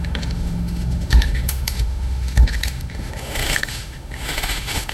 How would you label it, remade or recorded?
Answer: remade